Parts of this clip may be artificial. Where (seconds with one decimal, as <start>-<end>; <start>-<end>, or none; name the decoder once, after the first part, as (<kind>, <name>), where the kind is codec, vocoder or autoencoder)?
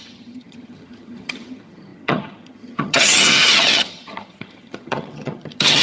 0.0-5.8 (vocoder, HiFi-GAN)